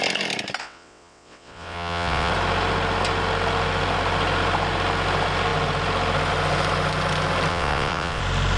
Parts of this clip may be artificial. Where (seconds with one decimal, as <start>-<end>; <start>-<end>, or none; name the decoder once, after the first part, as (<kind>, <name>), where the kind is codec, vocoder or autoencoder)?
0.6-2.3 (vocoder, WaveNeXt); 7.5-8.2